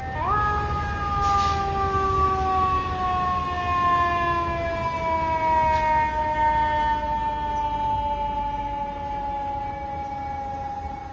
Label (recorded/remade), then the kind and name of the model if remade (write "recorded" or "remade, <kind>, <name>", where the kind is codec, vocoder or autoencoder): recorded